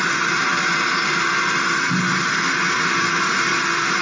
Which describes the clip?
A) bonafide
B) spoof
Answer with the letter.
A